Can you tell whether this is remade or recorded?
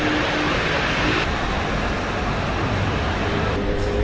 recorded